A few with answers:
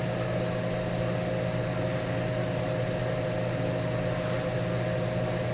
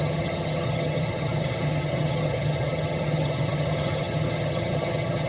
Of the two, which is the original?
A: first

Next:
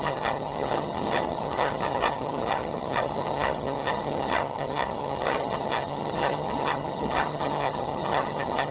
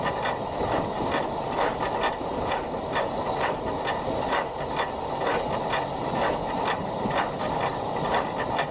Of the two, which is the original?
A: second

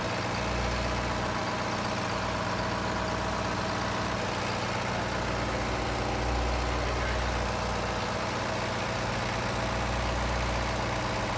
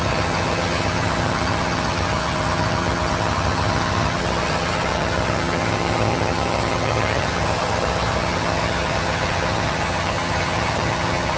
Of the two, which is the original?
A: first